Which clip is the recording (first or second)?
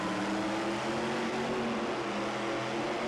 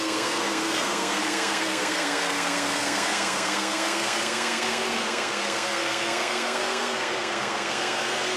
first